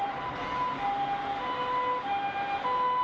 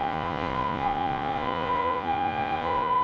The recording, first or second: first